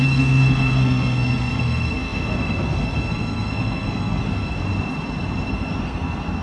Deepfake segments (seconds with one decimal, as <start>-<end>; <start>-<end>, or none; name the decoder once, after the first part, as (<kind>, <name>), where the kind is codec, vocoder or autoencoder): 0.0-4.6 (codec, SNAC); 5.5-6.4